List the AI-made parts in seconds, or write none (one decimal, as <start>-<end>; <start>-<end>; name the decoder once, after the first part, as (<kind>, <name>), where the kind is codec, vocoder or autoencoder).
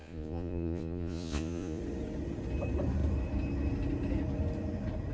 0.0-1.8 (vocoder, Vocos)